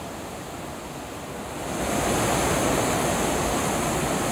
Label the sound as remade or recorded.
recorded